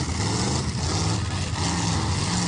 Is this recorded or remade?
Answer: recorded